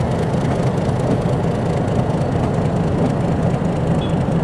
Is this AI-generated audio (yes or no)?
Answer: no